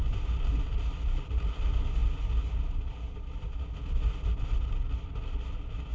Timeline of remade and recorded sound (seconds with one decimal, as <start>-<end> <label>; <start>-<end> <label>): 0.0-5.9 recorded